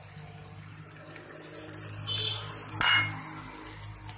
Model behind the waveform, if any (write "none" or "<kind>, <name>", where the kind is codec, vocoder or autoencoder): none